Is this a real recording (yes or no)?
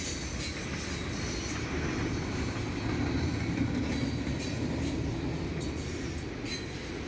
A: yes